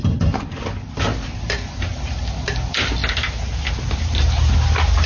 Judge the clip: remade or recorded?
recorded